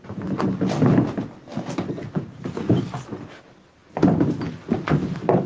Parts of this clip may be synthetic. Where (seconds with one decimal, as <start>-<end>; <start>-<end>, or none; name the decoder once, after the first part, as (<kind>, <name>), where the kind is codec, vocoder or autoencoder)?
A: none